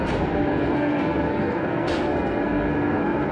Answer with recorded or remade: remade